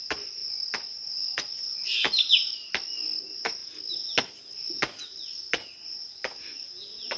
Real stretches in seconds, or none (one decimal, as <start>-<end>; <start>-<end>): 0.0-7.2